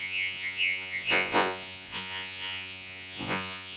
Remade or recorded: remade